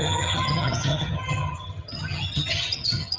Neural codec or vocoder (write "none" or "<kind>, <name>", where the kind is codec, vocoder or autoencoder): vocoder, HiFi-GAN